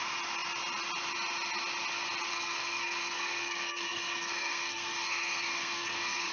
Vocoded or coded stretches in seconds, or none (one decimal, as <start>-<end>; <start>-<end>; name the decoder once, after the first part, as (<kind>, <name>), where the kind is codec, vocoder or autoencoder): 2.3-6.3 (codec, SNAC)